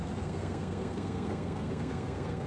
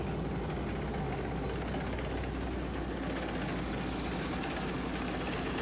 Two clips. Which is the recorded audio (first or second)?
second